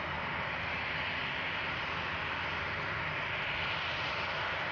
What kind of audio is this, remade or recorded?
recorded